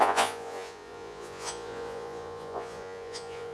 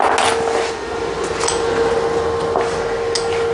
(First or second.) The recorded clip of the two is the second